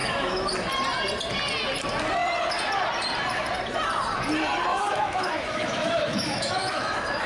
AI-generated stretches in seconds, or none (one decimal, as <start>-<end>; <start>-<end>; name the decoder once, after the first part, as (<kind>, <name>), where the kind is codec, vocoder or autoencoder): 0.0-0.5 (autoencoder, DAC-VAE); 4.7-7.3